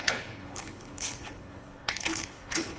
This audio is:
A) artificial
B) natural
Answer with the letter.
A